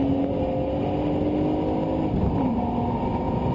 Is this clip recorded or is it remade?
recorded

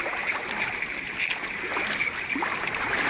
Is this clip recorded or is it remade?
recorded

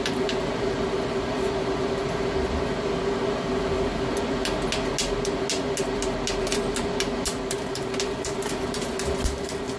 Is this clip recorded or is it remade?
recorded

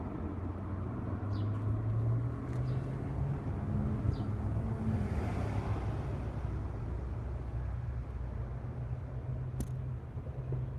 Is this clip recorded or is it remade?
recorded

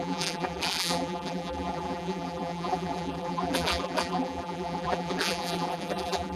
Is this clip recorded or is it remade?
remade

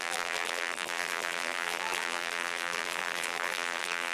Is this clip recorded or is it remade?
remade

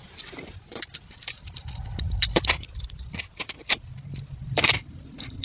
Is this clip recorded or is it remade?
remade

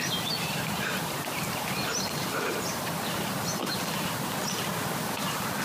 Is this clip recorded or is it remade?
recorded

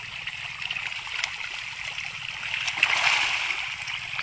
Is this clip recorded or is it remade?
recorded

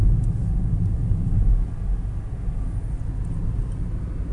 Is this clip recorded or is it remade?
recorded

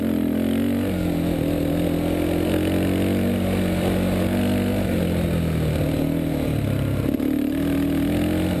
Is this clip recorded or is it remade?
recorded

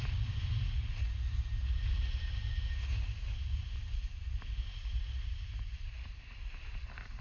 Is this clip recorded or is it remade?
recorded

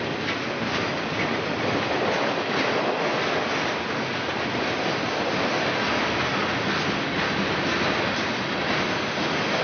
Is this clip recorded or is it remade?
recorded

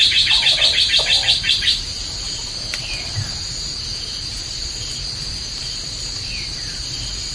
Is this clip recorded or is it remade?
remade